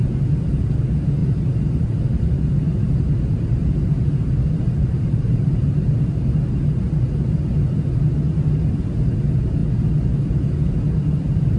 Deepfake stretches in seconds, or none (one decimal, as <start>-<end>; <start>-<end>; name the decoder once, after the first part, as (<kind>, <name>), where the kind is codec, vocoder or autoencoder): 1.2-6.0 (vocoder, BigVGAN v2)